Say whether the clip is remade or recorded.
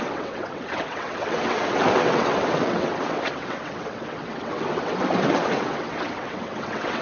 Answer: remade